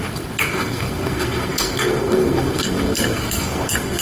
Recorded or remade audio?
remade